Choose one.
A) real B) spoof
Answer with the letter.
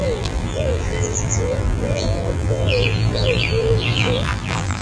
B